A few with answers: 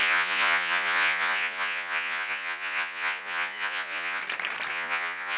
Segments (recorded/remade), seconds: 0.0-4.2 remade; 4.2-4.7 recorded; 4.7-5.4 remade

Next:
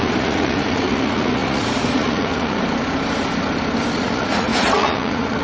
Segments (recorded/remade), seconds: 0.0-2.6 remade; 2.6-3.9 recorded; 3.9-5.4 remade

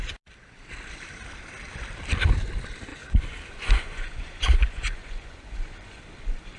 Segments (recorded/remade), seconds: 0.0-2.9 recorded; 2.9-6.0 remade; 6.0-6.6 recorded

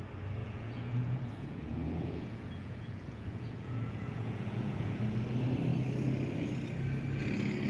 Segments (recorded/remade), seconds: 0.0-0.4 recorded; 0.4-5.0 remade; 5.0-7.7 recorded